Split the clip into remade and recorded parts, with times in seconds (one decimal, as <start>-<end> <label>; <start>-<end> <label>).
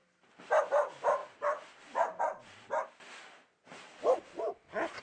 0.0-0.6 remade; 0.6-1.2 recorded; 1.2-2.2 remade; 2.2-5.0 recorded